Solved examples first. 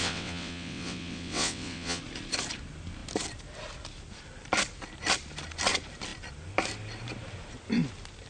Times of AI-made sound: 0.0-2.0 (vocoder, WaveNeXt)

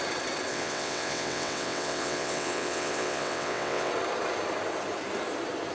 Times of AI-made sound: 0.5-3.9 (vocoder, WaveNeXt)

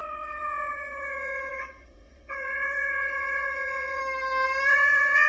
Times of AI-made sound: 0.0-4.0 (vocoder, WaveNeXt); 4.7-5.3

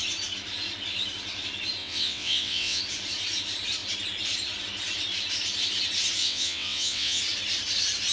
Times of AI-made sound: 1.8-2.8 (vocoder, WaveNeXt); 6.2-7.2

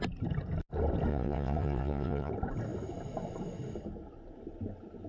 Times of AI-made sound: 1.1-2.3 (vocoder, WaveNeXt)